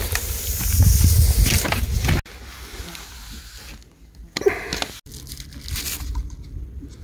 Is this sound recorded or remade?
recorded